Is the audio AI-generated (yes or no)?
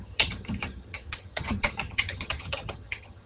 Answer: yes